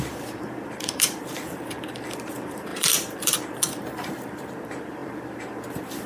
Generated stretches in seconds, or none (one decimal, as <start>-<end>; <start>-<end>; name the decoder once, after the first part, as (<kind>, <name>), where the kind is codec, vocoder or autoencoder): 0.0-6.1 (vocoder, BigVGAN v2)